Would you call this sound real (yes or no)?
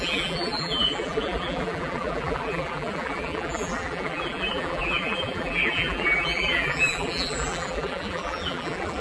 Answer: no